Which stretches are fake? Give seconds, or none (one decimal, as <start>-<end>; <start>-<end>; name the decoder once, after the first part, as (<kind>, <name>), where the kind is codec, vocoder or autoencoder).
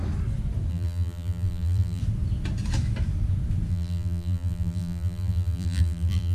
0.7-2.0 (vocoder, BigVGAN v2); 3.7-6.3